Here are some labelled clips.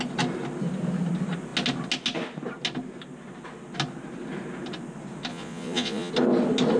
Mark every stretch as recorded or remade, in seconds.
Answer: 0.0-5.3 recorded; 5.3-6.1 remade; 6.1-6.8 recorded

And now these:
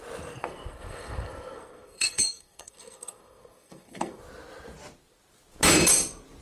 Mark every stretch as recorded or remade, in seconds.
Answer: 0.0-0.4 recorded; 0.4-4.2 remade; 4.2-6.4 recorded

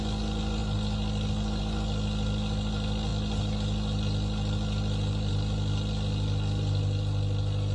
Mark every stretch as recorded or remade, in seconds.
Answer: 0.0-7.7 recorded